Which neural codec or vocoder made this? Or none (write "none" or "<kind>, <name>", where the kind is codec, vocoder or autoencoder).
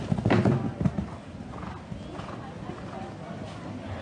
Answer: none